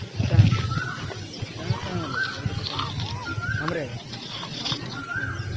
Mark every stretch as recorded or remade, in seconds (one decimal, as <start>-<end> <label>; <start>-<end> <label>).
0.0-3.9 recorded; 3.9-5.0 remade; 5.0-5.6 recorded